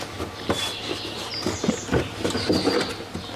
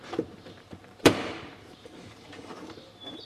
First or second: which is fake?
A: second